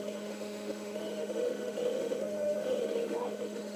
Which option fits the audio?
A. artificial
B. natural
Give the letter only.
A